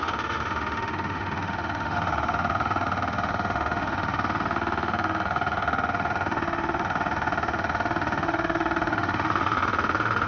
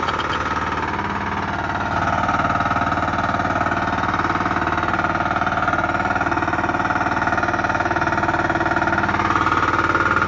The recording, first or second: second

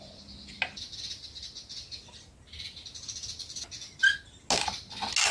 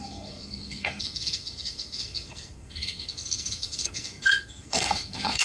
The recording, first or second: first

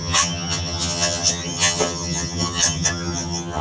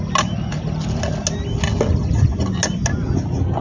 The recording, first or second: second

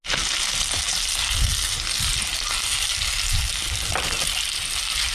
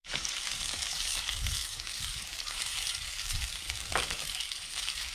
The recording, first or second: first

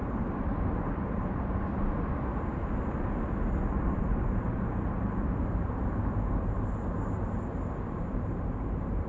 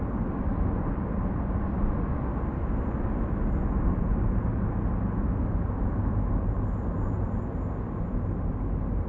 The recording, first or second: second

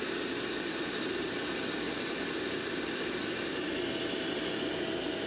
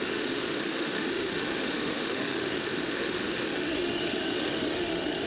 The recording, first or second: first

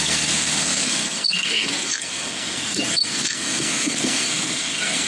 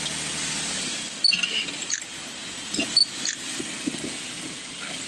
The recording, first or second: second